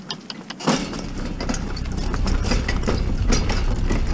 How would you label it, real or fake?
real